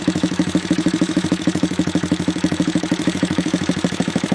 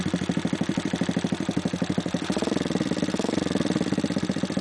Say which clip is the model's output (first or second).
first